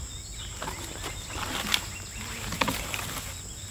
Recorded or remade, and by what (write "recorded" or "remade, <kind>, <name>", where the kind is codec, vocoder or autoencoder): recorded